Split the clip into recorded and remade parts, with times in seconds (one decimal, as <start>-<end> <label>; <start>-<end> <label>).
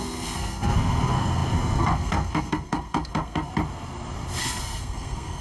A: 0.0-3.5 remade; 3.5-4.4 recorded; 4.4-5.4 remade